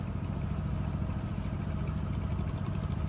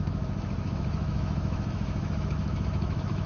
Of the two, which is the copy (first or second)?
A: second